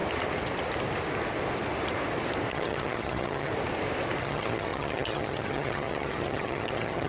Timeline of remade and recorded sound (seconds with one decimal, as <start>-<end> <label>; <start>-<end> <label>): 0.0-2.5 recorded; 2.5-3.5 remade; 3.5-4.2 recorded; 4.2-7.1 remade